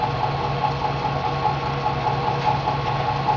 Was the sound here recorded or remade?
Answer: recorded